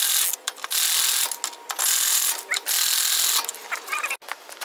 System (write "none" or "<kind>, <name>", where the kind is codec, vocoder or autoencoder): none